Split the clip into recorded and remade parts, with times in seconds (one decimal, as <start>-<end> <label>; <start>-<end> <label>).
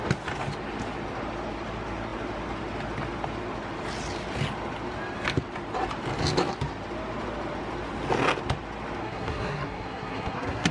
0.0-9.0 recorded; 9.0-10.7 remade